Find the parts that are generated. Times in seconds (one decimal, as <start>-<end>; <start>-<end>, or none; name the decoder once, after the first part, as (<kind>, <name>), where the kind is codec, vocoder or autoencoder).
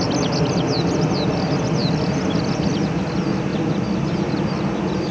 none